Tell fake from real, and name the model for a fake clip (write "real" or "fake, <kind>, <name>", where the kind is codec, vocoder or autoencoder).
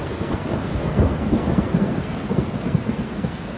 fake, codec, SNAC